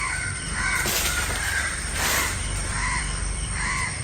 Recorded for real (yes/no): no